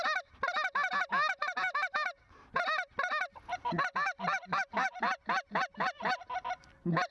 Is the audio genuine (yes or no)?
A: yes